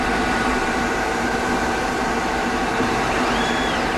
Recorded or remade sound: remade